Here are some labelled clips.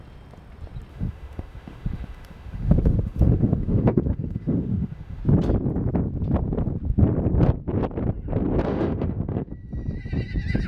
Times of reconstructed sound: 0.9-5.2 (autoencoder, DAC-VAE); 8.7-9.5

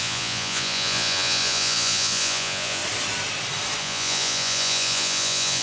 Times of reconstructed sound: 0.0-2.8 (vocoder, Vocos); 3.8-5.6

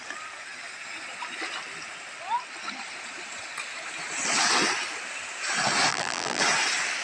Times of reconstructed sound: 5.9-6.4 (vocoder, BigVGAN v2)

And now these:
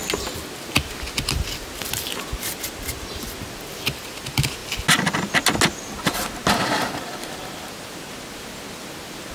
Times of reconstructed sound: none

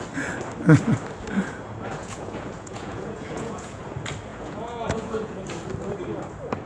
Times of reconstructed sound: 2.0-3.8 (vocoder, Vocos); 4.3-5.4

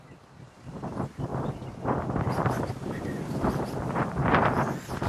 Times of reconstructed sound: none

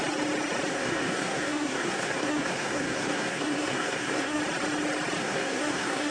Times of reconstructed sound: 0.7-4.4 (codec, SNAC); 5.2-6.1